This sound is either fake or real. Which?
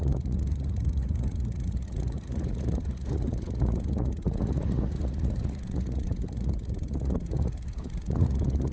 fake